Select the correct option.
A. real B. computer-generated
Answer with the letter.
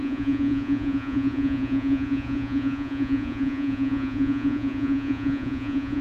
B